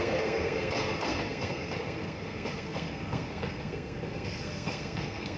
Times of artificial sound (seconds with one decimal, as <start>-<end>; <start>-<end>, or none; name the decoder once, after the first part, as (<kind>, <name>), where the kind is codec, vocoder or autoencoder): 0.0-5.4 (codec, SNAC)